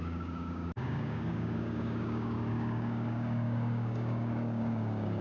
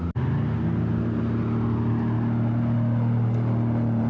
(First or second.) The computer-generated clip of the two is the first